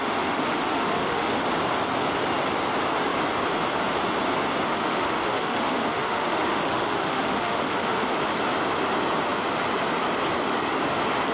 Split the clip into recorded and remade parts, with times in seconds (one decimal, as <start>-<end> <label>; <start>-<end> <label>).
0.0-1.4 remade; 1.4-4.7 recorded; 4.7-8.1 remade; 8.1-11.3 recorded